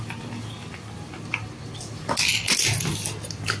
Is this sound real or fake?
real